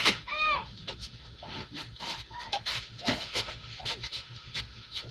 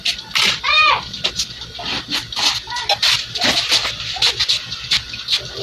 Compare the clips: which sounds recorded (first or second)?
second